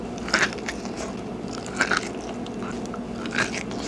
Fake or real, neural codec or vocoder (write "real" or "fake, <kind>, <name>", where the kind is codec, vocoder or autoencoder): real